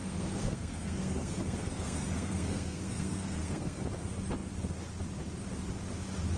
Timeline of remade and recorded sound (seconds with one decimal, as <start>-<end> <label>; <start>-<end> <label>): 0.0-3.8 remade; 3.8-6.4 recorded